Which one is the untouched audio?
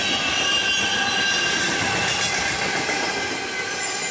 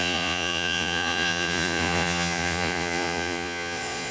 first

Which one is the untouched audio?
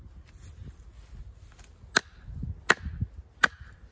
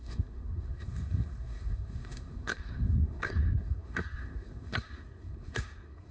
first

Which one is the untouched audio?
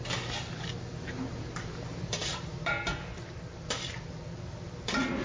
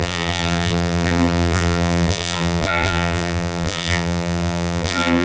first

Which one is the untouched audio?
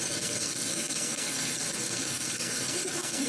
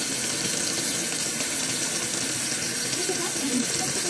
second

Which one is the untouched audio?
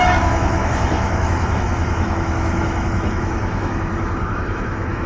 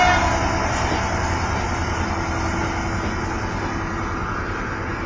second